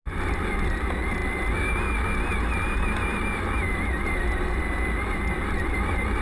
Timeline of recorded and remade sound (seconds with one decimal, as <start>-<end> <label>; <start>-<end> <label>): 0.0-6.2 recorded